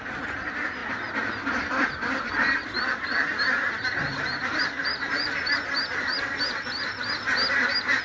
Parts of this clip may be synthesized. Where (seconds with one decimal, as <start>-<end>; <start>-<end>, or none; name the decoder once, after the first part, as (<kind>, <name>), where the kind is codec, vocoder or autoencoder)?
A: 0.8-5.6 (vocoder, BigVGAN v2)